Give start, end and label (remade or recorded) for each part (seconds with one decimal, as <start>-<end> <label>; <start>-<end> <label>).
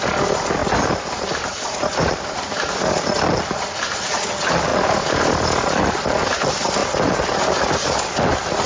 0.0-0.6 recorded; 0.6-2.7 remade; 2.7-4.7 recorded; 4.7-5.9 remade; 5.9-8.7 recorded